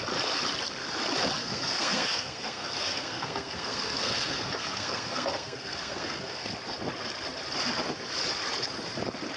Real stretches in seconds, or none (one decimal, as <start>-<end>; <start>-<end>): 0.0-1.4; 6.5-9.4